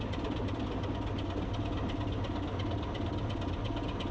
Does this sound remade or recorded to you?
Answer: recorded